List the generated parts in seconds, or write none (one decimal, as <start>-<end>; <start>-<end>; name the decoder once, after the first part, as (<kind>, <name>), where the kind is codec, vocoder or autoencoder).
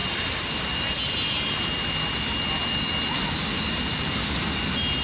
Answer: none